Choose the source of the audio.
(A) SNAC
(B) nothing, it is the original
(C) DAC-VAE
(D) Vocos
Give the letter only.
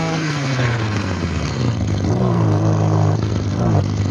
A